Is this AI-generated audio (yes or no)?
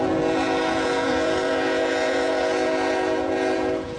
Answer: yes